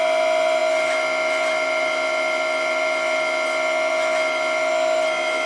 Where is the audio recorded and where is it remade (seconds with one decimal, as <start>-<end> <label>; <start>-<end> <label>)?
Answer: 0.0-5.5 recorded